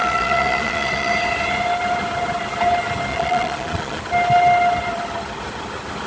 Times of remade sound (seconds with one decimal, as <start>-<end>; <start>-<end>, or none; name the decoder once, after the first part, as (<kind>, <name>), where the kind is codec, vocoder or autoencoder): 0.0-1.1 (vocoder, Vocos); 3.1-4.0